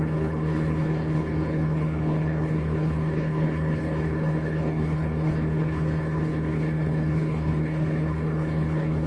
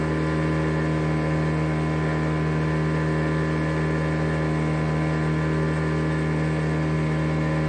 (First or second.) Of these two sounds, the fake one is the first